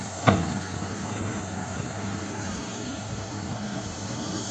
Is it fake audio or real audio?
fake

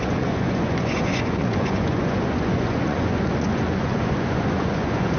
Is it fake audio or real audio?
fake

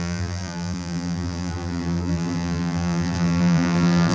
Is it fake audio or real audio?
fake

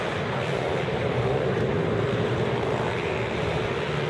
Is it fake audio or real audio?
real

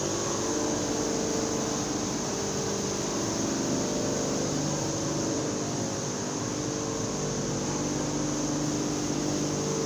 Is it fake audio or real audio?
real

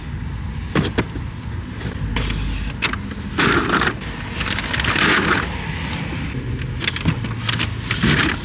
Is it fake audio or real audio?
real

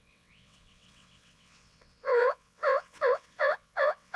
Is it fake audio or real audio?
fake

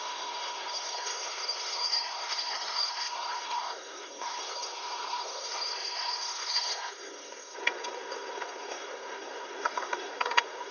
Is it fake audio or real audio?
fake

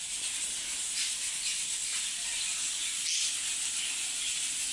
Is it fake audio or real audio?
real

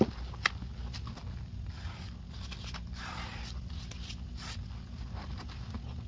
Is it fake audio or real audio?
real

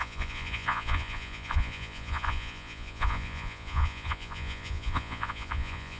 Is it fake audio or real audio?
fake